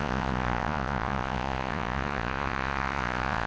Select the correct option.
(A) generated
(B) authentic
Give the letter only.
A